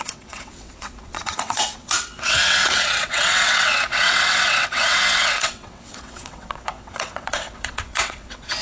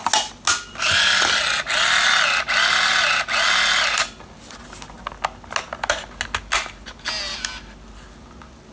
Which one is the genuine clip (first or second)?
second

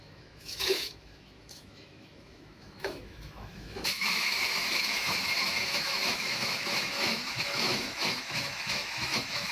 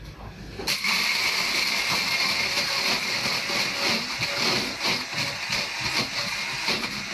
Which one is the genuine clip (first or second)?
second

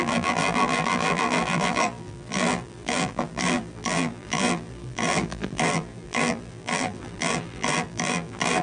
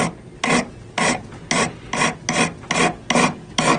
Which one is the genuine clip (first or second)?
second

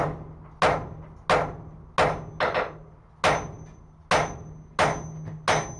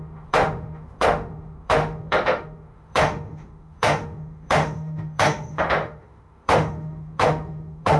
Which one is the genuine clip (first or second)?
first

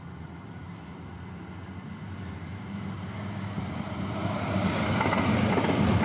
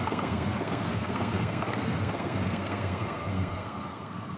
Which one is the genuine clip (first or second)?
first